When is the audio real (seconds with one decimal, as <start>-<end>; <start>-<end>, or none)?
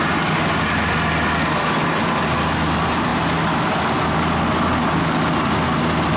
0.0-6.2